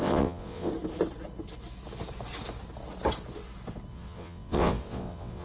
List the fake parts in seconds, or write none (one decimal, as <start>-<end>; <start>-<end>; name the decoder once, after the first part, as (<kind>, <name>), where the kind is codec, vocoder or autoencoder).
0.0-0.7 (vocoder, WaveNeXt); 3.9-5.4